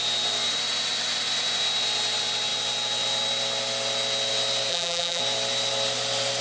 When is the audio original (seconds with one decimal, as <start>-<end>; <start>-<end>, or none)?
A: 0.0-4.7; 5.2-6.4